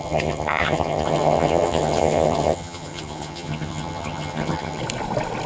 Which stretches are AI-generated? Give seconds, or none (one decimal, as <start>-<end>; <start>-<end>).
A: 0.0-4.8